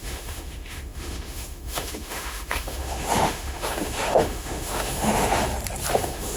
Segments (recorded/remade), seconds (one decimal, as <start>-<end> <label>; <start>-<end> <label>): 0.0-5.4 remade; 5.4-5.9 recorded; 5.9-6.4 remade